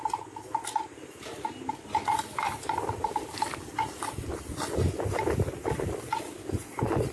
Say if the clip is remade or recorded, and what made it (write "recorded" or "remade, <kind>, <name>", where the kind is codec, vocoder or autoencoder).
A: recorded